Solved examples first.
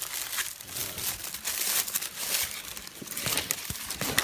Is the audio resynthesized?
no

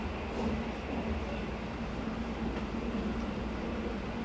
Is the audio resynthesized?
no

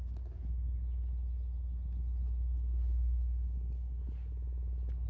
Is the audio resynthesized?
no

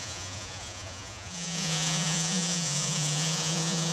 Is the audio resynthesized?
yes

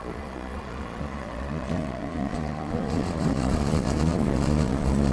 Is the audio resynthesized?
yes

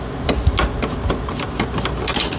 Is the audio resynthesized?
no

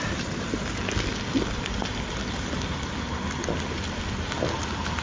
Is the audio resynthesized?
no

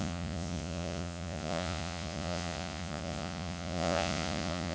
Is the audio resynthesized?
yes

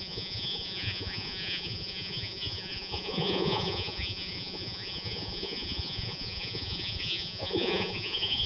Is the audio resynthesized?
yes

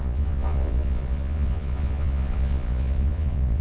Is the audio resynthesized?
yes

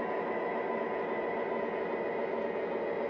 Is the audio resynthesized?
no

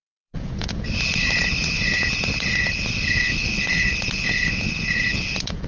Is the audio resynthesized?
yes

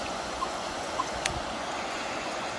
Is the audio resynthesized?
yes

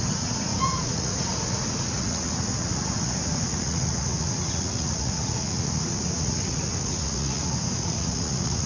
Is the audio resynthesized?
yes